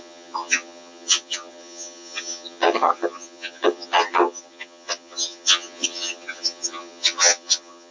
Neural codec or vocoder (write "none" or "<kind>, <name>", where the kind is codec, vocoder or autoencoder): vocoder, HiFi-GAN